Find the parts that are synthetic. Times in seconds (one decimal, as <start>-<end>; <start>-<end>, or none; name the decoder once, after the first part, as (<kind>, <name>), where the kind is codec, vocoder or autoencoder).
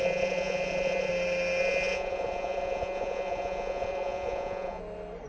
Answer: 0.0-1.1 (vocoder, Vocos); 1.6-4.8